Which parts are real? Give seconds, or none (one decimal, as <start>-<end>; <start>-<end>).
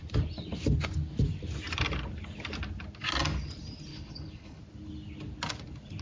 0.0-3.9; 4.6-6.0